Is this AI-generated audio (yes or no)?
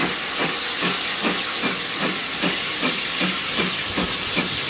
no